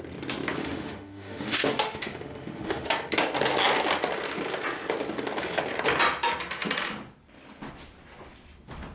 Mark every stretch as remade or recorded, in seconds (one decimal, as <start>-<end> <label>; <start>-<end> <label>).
0.0-0.6 recorded; 0.6-2.9 remade; 2.9-8.9 recorded